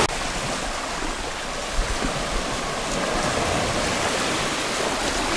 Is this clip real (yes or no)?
yes